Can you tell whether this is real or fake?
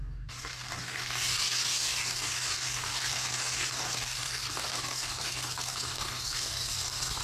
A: fake